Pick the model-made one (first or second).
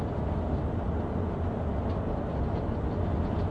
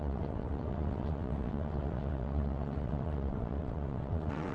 second